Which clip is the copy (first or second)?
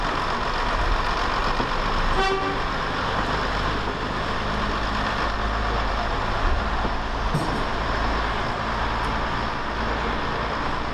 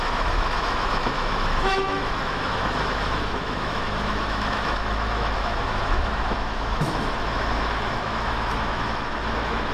second